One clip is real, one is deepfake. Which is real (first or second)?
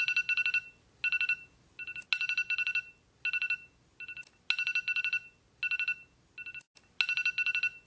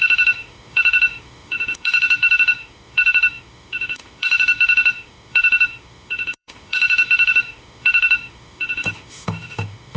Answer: first